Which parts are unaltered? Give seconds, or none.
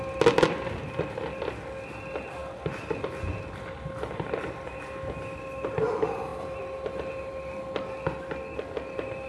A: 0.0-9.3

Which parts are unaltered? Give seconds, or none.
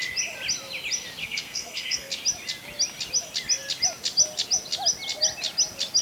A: 0.0-1.2; 2.1-6.0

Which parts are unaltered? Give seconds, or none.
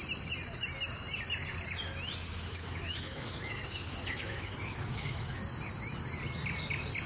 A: 0.0-2.3; 5.4-7.1